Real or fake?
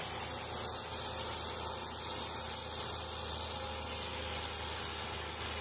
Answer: real